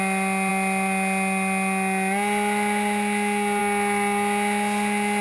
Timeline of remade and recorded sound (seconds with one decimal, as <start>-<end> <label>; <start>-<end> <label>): 0.0-5.2 recorded